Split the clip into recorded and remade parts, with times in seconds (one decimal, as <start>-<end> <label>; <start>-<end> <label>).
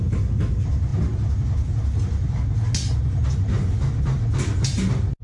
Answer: 0.0-5.2 recorded